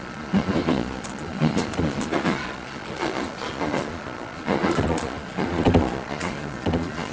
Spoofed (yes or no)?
yes